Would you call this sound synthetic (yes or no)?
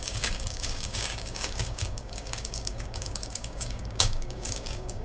yes